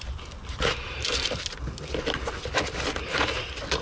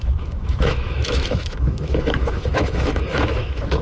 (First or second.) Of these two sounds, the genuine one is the first